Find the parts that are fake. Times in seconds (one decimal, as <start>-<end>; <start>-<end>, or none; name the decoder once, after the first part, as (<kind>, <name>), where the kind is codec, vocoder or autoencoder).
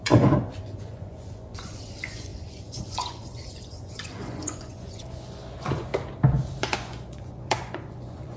0.0-5.9 (vocoder, Vocos); 6.6-8.4